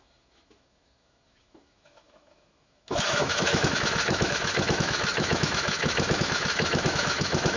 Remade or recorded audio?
remade